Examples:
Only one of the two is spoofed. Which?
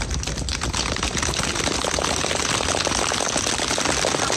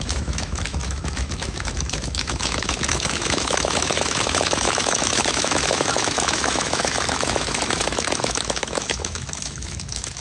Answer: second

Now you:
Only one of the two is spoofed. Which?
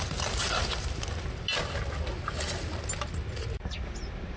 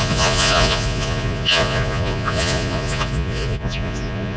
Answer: second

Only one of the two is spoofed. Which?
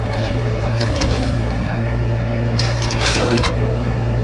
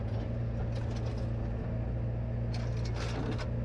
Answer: first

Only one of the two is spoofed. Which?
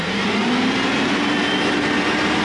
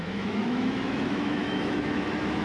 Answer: second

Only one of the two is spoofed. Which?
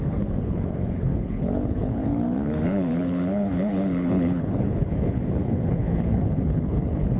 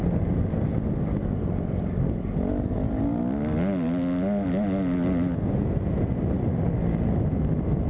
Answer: first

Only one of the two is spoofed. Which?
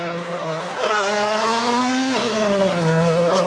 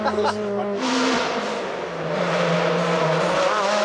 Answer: first